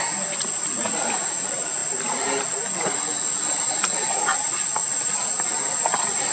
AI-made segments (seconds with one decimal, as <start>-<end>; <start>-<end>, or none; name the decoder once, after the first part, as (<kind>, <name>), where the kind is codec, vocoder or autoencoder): none